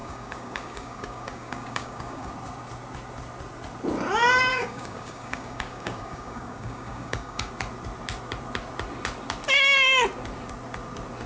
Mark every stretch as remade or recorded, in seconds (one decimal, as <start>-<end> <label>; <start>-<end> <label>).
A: 0.0-2.3 remade; 2.3-4.5 recorded; 4.5-7.5 remade; 7.5-11.3 recorded